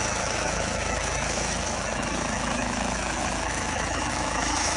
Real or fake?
fake